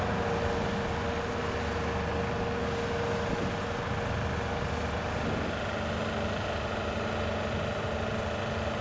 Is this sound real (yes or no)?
yes